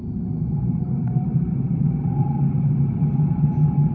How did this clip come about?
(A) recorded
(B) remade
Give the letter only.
B